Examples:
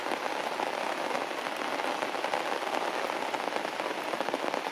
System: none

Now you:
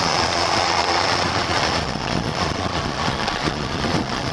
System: vocoder, Vocos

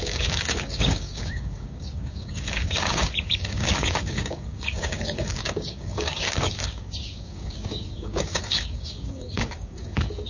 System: codec, DAC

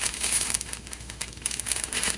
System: autoencoder, DAC-VAE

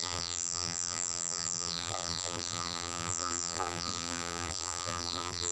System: vocoder, BigVGAN v2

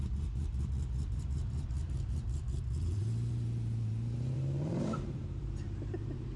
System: vocoder, BigVGAN v2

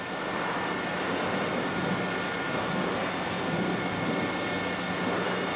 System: none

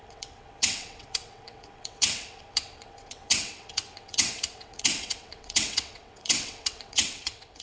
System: vocoder, WaveNeXt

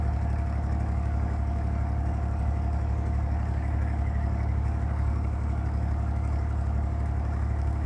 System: codec, DAC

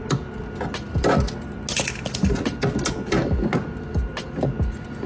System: none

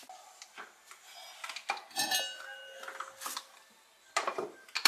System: none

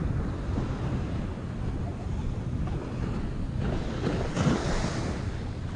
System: none